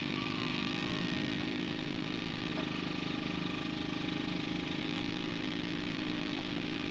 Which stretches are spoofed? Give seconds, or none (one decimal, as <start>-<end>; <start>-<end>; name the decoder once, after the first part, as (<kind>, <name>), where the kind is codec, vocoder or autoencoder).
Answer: 0.0-2.5 (vocoder, BigVGAN v2); 4.8-6.9